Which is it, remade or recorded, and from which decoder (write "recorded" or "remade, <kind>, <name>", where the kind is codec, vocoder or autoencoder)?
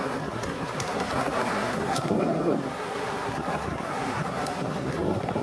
remade, codec, SNAC